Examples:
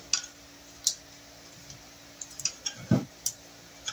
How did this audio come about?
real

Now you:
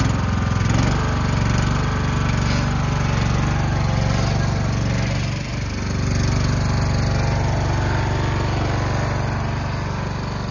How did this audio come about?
real